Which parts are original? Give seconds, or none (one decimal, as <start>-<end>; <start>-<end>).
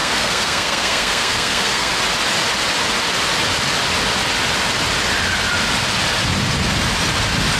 1.9-7.6